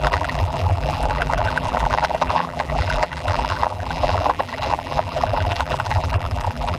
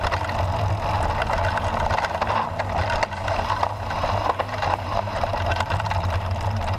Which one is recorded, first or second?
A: second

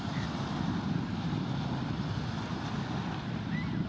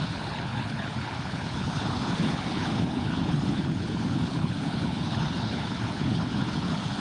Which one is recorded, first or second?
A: first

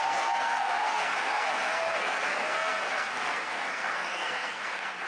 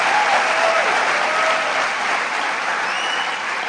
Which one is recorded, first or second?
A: second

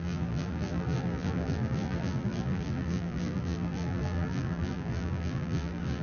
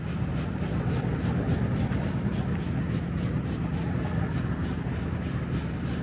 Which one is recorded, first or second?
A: second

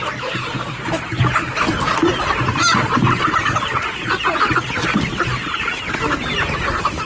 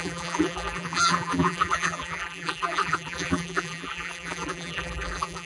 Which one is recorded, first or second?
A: first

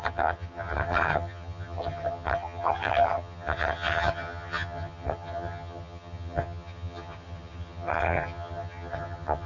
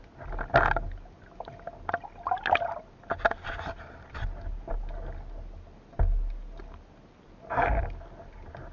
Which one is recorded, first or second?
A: second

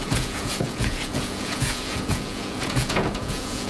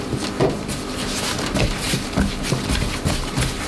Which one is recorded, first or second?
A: second